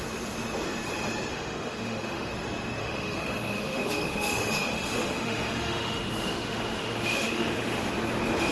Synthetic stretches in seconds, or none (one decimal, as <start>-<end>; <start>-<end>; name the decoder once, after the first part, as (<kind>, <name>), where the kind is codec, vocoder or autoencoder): 1.3-2.3 (autoencoder, DAC-VAE); 2.8-7.9